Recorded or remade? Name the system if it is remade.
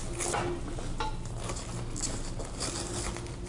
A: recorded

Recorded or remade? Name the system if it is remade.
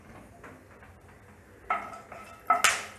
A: recorded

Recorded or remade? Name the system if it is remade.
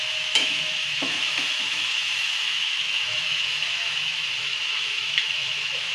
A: remade, autoencoder, DAC-VAE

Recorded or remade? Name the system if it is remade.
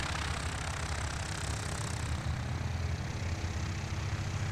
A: recorded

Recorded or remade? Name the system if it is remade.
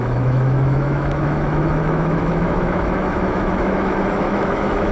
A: remade, autoencoder, DAC-VAE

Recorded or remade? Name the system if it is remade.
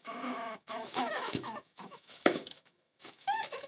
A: remade, autoencoder, DAC-VAE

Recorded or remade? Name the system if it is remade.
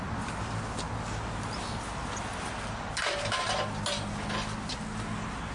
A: recorded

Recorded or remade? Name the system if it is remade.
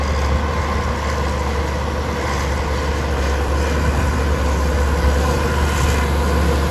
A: recorded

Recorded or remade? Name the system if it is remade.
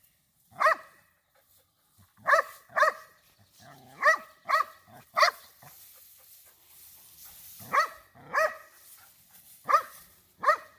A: recorded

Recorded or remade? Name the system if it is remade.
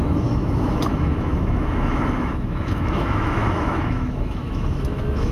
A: remade, autoencoder, DAC-VAE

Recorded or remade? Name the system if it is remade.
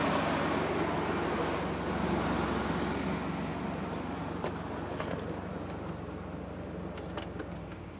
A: recorded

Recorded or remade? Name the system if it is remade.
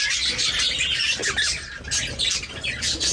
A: recorded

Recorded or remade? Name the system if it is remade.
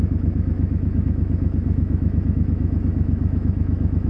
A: remade, autoencoder, DAC-VAE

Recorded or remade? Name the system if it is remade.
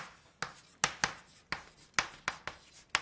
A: recorded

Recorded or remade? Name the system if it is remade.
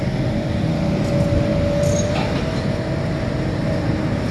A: recorded